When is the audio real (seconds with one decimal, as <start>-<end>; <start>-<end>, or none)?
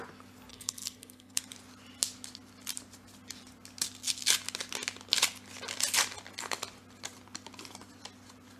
0.0-0.5; 1.4-8.6